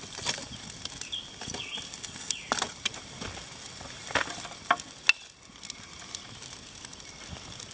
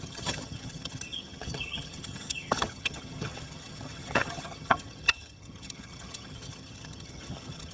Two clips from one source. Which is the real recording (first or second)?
first